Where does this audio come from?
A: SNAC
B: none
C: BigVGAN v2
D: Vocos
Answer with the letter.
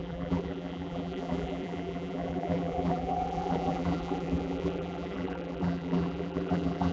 C